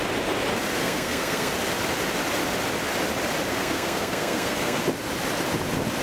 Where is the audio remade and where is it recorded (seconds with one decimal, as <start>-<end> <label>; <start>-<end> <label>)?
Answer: 0.0-0.8 recorded; 0.8-1.5 remade; 1.5-3.5 recorded; 3.5-4.8 remade; 4.8-6.0 recorded